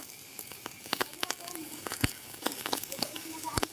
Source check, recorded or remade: remade